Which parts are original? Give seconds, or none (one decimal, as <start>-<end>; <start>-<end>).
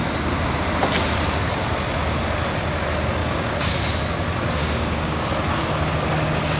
0.0-3.2; 3.7-4.6; 5.2-6.6